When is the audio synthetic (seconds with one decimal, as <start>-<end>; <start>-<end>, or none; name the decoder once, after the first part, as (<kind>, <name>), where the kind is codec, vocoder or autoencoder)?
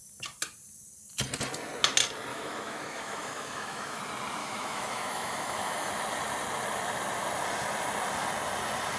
2.3-4.0 (autoencoder, DAC-VAE); 4.4-5.9